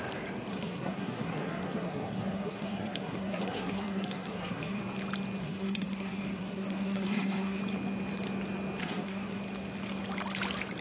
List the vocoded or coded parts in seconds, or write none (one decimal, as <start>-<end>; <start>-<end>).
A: 0.5-4.8; 5.4-7.6; 8.8-9.4